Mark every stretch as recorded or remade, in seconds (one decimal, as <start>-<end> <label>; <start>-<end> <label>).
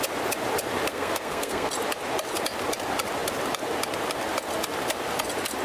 0.0-0.9 recorded; 0.9-1.7 remade; 1.7-5.6 recorded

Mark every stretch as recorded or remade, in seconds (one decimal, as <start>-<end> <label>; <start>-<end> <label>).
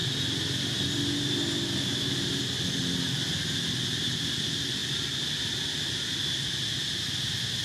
0.0-7.6 recorded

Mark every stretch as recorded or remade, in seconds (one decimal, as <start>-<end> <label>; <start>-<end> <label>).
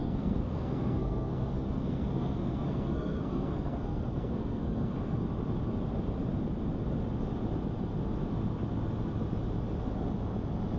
0.0-5.2 remade; 5.2-10.8 recorded